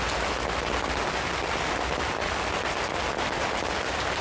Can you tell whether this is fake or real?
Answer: real